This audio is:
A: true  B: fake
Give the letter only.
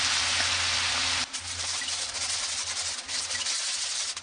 A